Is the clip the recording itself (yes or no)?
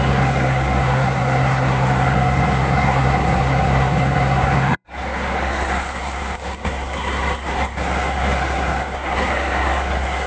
no